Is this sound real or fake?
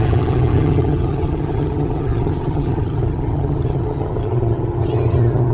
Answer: fake